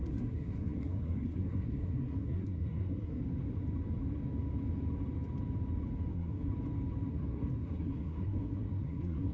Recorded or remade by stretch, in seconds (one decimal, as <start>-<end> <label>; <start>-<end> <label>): 0.0-3.2 remade; 3.2-6.1 recorded; 6.1-6.5 remade; 6.5-7.1 recorded; 7.1-9.3 remade